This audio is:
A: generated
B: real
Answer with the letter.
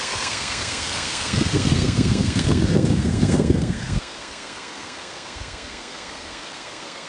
A